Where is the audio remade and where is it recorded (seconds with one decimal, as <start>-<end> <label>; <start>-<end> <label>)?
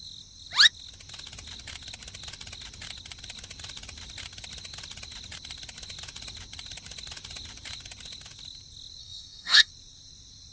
0.0-9.0 recorded; 9.0-9.7 remade; 9.7-10.5 recorded